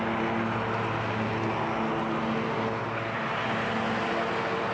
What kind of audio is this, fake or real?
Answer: real